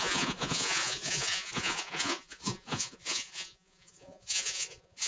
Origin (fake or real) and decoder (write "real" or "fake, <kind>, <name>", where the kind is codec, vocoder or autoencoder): fake, vocoder, Vocos